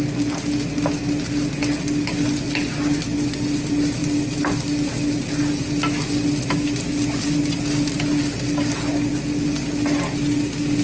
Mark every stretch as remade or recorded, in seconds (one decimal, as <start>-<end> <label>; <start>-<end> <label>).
0.0-10.8 recorded